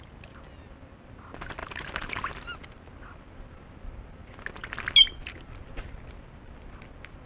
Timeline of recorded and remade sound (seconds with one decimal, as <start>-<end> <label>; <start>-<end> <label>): 0.0-1.6 recorded; 1.6-2.2 remade; 2.2-7.3 recorded